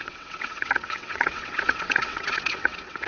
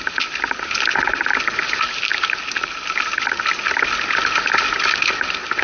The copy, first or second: first